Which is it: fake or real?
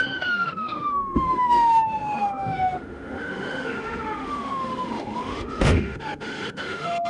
fake